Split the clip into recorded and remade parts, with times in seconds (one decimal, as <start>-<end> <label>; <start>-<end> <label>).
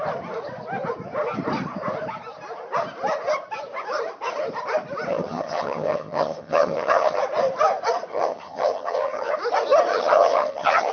0.0-5.1 recorded; 5.1-7.2 remade; 7.2-8.1 recorded; 8.1-9.3 remade; 9.3-9.9 recorded; 9.9-10.9 remade